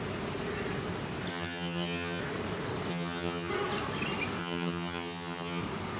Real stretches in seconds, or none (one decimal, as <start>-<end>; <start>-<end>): 0.0-1.3; 2.2-2.9; 3.5-4.4; 5.6-6.0